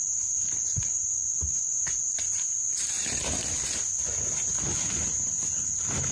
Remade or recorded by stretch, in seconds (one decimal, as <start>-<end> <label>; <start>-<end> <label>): 0.0-6.1 recorded